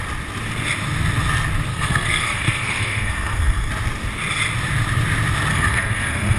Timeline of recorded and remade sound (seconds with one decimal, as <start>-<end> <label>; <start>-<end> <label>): 0.0-1.7 recorded; 1.7-3.7 remade; 3.7-5.5 recorded; 5.5-6.4 remade